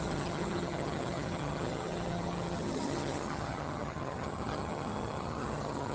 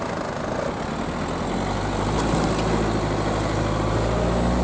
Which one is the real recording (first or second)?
second